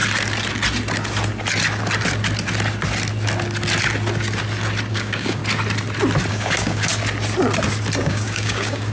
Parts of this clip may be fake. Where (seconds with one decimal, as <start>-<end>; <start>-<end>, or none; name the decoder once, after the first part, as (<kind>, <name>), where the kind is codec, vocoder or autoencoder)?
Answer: 4.9-5.4 (codec, DAC); 6.3-6.9; 8.0-8.9